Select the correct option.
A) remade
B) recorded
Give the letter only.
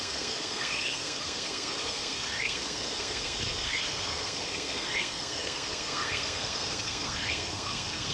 A